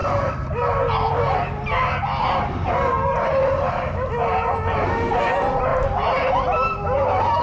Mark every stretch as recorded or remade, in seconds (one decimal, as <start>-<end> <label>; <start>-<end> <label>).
0.0-7.4 recorded